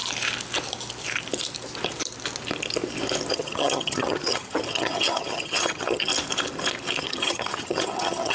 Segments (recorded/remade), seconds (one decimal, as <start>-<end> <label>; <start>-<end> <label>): 0.0-3.3 recorded; 3.3-6.1 remade; 6.1-7.0 recorded; 7.0-8.3 remade